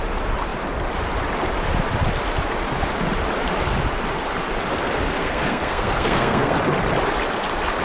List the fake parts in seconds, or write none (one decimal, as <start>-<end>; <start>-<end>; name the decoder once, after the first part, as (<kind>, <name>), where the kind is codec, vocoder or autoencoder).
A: 5.2-6.6 (codec, SNAC)